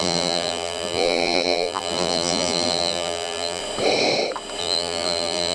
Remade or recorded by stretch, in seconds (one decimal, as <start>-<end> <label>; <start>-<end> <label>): 0.0-3.6 remade; 3.6-4.6 recorded; 4.6-5.5 remade